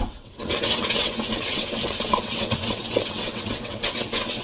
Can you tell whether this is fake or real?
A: fake